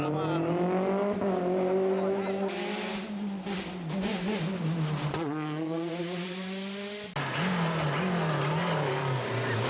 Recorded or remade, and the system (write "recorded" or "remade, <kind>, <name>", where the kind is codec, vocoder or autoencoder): recorded